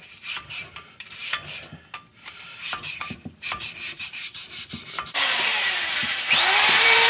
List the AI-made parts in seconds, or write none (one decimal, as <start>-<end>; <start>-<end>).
0.0-1.2; 2.1-7.1